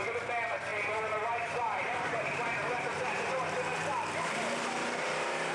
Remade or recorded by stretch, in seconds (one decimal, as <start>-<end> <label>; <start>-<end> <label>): 0.0-5.5 remade